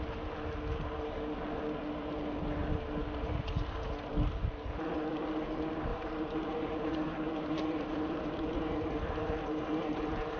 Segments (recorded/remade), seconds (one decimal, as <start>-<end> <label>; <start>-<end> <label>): 0.0-5.9 recorded; 5.9-10.4 remade